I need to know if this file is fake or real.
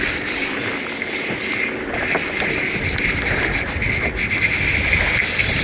real